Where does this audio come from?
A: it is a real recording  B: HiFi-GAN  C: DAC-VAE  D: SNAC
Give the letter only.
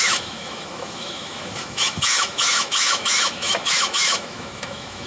C